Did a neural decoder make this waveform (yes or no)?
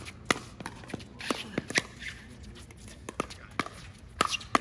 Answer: no